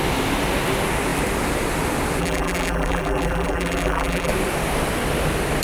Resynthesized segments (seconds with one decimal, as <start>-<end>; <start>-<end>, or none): 2.2-4.3